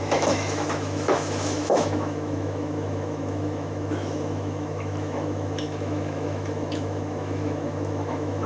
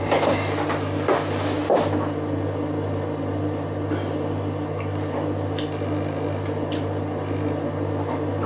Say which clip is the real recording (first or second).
second